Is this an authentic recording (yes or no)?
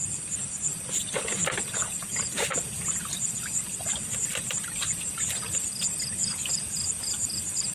yes